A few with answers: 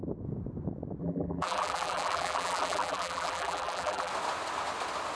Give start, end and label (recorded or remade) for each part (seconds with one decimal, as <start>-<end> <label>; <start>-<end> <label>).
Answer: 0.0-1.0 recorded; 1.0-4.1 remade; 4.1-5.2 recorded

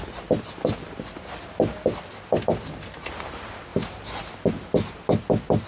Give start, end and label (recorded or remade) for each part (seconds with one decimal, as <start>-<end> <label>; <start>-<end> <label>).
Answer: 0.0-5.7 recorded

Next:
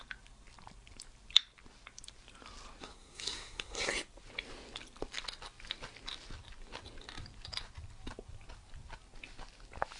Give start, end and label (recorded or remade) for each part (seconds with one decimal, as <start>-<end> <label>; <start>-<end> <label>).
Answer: 0.0-2.8 recorded; 2.8-3.9 remade; 3.9-10.0 recorded

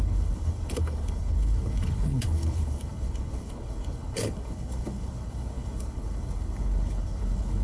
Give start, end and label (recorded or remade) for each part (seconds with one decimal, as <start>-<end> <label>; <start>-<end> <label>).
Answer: 0.0-7.6 remade